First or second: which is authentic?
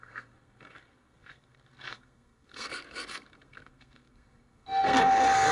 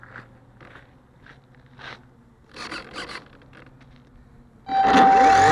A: second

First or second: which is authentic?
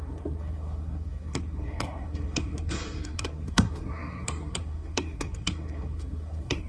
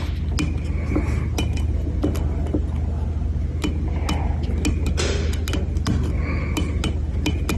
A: second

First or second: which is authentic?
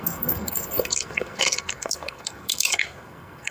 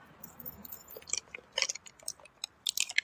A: second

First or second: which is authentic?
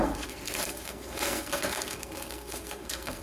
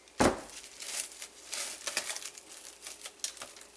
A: second